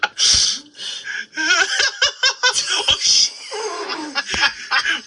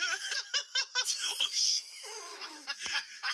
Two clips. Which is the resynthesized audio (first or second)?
second